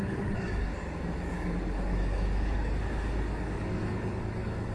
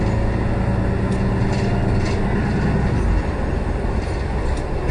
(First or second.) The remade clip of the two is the first